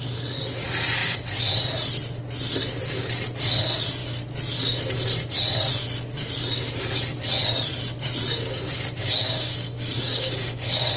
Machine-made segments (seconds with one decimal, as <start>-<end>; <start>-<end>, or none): 9.0-11.0